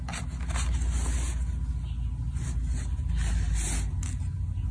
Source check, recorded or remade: recorded